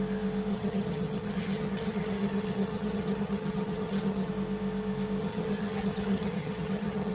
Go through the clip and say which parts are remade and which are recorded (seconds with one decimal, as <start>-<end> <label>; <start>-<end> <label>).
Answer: 0.0-0.5 recorded; 0.5-4.3 remade; 4.3-5.2 recorded; 5.2-7.1 remade